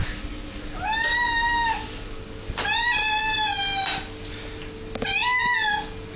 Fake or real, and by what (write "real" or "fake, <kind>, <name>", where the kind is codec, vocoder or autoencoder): real